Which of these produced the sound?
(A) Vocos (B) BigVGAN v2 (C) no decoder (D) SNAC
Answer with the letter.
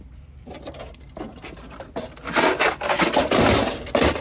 C